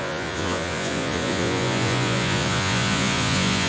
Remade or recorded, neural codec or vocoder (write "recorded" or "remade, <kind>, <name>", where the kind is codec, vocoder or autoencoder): remade, vocoder, Vocos